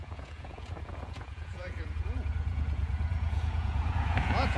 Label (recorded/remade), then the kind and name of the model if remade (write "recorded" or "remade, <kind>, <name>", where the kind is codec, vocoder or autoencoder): remade, vocoder, Vocos